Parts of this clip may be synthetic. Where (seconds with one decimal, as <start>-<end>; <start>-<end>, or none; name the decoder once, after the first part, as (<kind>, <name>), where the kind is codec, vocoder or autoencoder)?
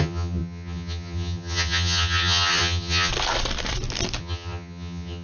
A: 0.0-3.1 (vocoder, HiFi-GAN); 4.2-5.2